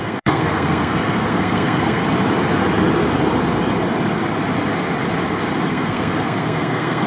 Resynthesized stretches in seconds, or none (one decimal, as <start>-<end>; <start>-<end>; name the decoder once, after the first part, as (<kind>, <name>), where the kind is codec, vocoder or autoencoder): 0.0-2.0 (codec, SNAC); 5.7-7.1